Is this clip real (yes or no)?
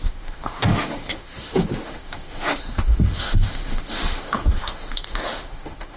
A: no